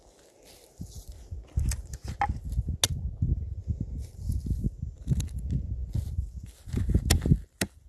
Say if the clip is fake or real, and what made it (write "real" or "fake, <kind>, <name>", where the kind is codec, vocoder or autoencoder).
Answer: real